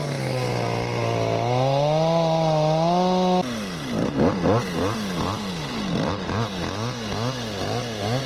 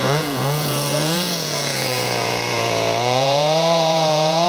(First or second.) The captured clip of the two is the first